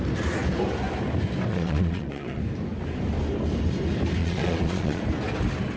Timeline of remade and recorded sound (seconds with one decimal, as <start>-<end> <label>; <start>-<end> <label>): 0.0-1.5 recorded; 1.5-2.4 remade; 2.4-4.2 recorded; 4.2-5.0 remade; 5.0-5.8 recorded